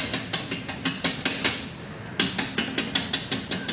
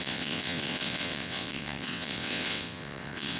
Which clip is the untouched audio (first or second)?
first